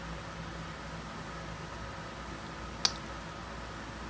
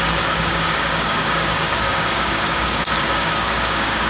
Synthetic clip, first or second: second